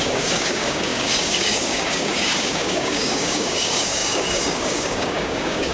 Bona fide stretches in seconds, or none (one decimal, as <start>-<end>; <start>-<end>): none